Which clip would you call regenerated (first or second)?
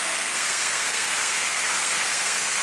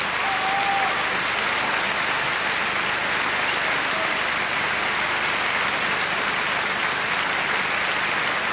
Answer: first